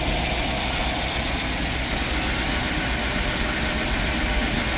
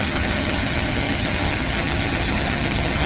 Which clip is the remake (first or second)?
second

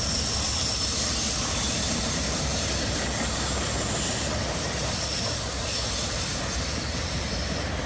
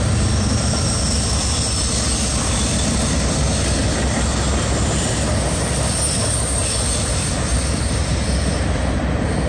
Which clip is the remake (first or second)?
first